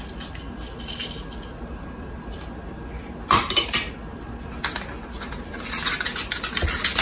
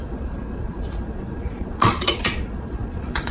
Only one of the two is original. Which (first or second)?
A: first